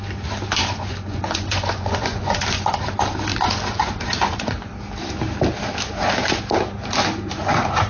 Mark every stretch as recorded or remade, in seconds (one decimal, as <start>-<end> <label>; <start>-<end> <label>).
0.0-0.6 recorded; 0.6-2.7 remade; 2.7-3.3 recorded; 3.3-4.7 remade; 4.7-7.9 recorded